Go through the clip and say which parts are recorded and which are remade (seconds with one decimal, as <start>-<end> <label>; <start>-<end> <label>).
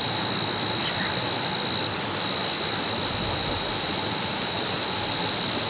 0.0-5.7 recorded